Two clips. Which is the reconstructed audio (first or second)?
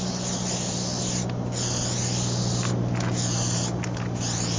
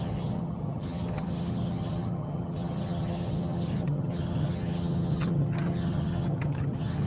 second